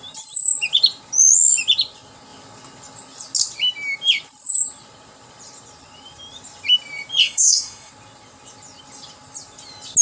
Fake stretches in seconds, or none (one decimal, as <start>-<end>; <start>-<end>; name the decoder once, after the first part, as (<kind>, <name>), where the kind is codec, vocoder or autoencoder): 7.2-7.9 (codec, SNAC)